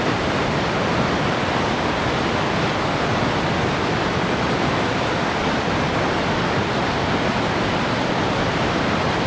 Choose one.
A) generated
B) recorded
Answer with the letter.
B